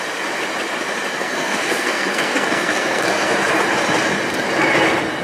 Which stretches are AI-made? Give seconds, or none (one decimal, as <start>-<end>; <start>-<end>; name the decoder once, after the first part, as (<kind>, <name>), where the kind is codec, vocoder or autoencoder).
1.2-3.5 (codec, SNAC)